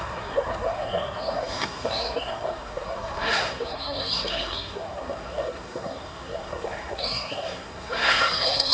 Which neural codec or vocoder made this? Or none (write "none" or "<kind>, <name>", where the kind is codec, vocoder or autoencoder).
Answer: codec, SNAC